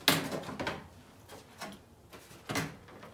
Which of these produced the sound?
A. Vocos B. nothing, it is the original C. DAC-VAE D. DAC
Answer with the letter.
B